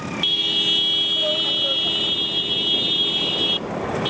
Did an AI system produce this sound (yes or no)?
no